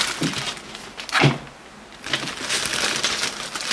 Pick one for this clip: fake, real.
real